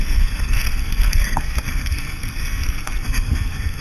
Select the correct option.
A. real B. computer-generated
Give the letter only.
B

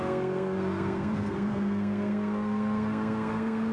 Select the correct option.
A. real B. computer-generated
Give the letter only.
B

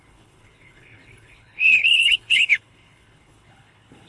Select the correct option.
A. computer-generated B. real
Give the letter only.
A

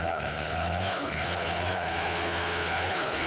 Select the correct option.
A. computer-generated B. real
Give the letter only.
A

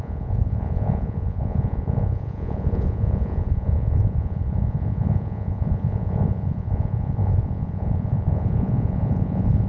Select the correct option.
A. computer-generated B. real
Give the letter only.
A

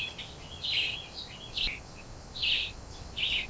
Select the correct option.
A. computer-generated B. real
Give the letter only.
B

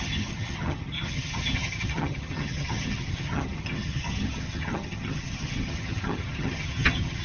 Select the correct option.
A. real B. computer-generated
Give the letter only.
B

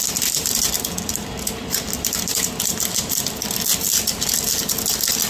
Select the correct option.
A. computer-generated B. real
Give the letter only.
B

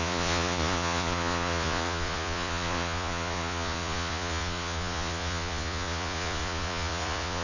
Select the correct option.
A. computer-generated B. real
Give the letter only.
A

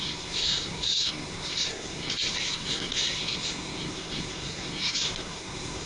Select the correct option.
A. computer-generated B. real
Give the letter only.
A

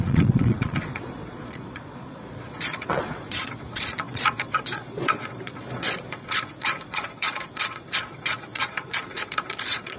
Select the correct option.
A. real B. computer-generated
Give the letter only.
B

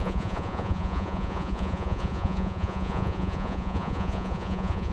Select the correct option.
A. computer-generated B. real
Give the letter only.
A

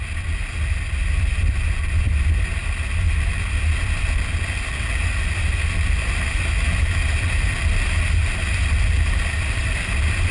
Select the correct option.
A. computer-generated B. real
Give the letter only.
B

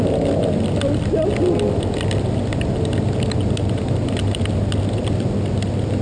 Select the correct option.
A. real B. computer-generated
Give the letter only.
A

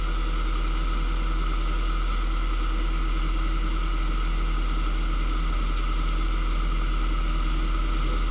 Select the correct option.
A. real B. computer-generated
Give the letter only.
A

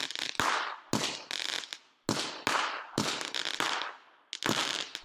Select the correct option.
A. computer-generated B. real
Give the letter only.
B